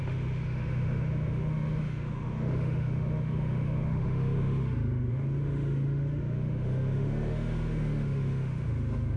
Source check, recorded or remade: remade